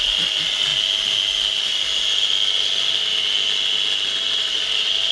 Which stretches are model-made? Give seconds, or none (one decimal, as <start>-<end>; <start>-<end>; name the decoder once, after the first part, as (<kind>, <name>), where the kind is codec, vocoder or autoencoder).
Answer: none